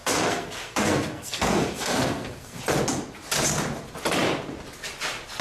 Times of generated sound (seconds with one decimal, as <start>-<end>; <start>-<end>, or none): 0.0-2.6